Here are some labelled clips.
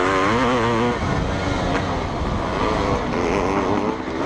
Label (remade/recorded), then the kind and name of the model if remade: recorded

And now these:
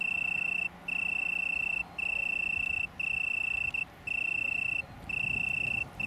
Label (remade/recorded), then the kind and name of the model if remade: recorded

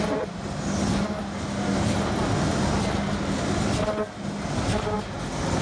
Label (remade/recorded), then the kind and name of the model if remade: recorded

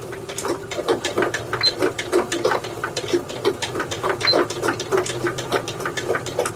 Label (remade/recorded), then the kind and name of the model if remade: recorded